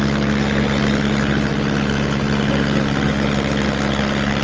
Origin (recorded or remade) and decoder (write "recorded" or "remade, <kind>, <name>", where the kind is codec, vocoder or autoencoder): recorded